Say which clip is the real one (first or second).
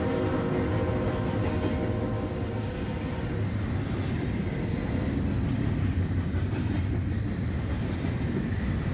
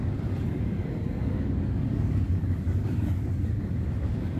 first